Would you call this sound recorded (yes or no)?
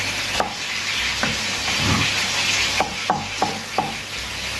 yes